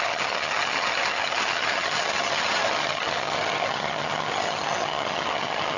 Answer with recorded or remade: remade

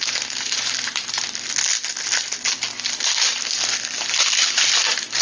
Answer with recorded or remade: recorded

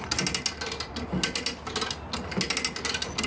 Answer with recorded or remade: recorded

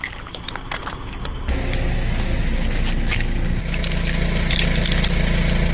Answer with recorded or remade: recorded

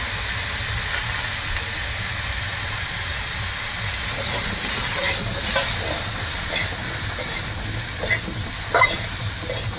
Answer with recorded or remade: recorded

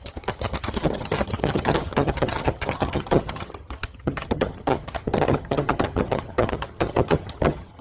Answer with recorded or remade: remade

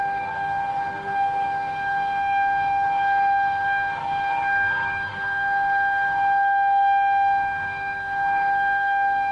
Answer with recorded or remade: remade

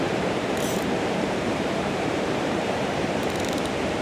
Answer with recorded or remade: remade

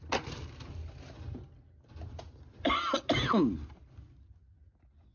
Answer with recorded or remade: recorded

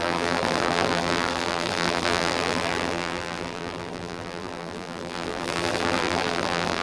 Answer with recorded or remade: remade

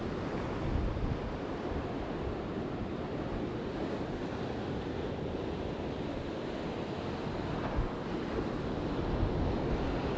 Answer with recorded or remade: recorded